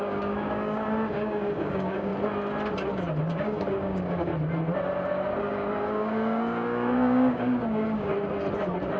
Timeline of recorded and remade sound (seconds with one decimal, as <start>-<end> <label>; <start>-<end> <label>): 0.0-2.1 remade; 2.1-3.3 recorded; 3.3-4.3 remade; 4.3-5.4 recorded; 5.4-8.1 remade; 8.1-9.0 recorded